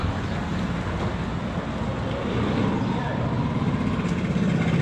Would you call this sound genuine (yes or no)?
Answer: yes